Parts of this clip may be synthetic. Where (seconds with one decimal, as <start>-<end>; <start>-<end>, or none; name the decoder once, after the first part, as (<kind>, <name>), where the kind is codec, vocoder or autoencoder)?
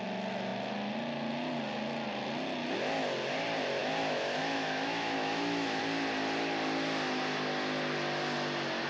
3.8-5.8 (autoencoder, DAC-VAE)